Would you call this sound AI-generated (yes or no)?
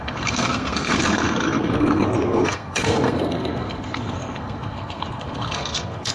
yes